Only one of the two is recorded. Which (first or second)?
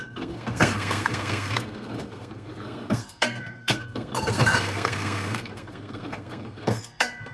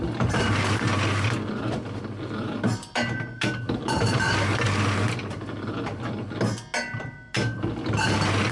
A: second